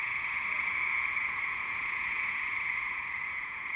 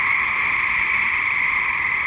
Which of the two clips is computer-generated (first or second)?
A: first